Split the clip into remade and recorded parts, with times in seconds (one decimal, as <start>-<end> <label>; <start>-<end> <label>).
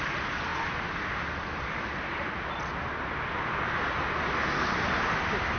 0.0-5.6 recorded